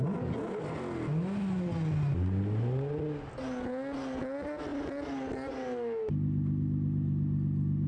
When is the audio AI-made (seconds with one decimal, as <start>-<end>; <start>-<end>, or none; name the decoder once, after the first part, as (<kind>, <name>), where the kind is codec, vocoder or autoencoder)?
none